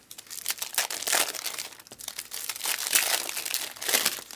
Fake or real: real